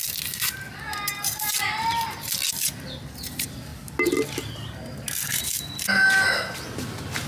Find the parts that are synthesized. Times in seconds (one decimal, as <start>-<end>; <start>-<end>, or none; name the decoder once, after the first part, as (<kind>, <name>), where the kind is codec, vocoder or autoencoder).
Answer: none